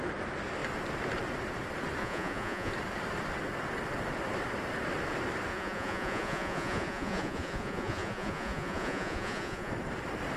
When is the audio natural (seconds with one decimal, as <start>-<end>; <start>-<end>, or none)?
0.0-2.0; 2.7-5.5; 9.7-10.4